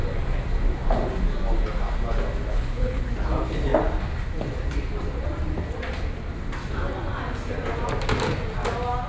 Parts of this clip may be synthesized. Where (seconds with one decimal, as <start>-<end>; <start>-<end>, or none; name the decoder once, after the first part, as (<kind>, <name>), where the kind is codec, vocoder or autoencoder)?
2.5-3.1 (codec, HILCodec)